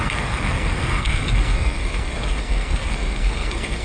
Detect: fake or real fake